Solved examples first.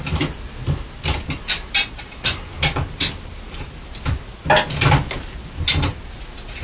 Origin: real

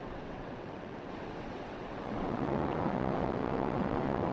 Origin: fake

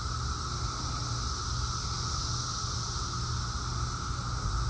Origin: real